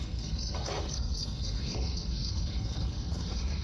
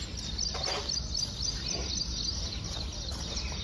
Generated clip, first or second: first